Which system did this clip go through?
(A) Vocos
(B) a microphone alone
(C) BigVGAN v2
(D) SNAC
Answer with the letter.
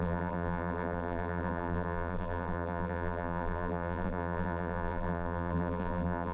C